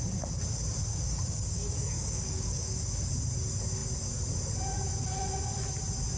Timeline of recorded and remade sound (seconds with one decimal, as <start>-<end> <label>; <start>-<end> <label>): 0.0-0.9 recorded; 0.9-2.8 remade; 2.8-6.2 recorded